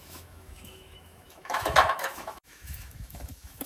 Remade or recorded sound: remade